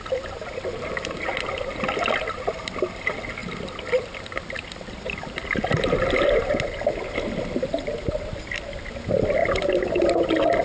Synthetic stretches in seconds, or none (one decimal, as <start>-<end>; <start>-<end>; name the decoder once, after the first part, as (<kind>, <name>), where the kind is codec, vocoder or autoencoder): 9.4-10.1 (vocoder, BigVGAN v2)